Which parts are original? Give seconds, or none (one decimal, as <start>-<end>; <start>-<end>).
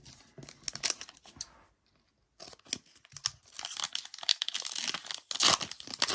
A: 0.0-4.3; 4.8-6.1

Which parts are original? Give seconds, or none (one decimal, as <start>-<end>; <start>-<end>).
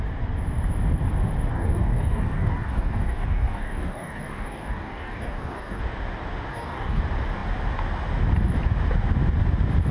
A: 0.0-1.5; 5.8-6.5; 7.0-9.9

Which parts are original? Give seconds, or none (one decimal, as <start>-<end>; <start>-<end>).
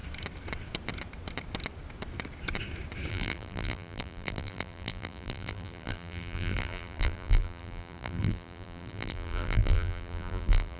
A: 0.0-3.1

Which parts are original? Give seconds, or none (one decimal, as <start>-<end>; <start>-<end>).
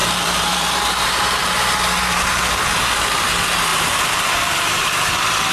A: 2.5-3.7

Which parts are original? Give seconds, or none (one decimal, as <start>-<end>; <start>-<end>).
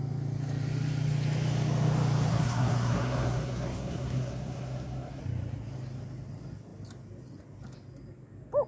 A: 0.0-2.3; 5.2-8.7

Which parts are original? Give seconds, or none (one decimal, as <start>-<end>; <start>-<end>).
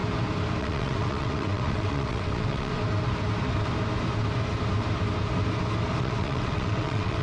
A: 0.0-0.6; 2.7-6.0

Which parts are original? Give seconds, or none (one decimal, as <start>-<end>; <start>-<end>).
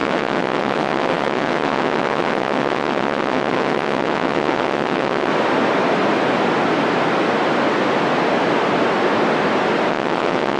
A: 5.3-9.9